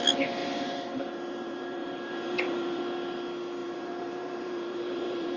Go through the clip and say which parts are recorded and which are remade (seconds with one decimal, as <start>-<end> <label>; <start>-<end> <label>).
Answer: 0.0-0.4 recorded; 0.4-2.8 remade; 2.8-3.6 recorded; 3.6-5.4 remade